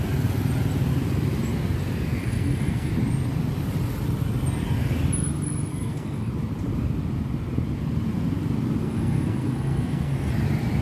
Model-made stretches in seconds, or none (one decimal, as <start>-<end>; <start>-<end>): 2.2-2.9; 5.7-6.3; 8.8-10.3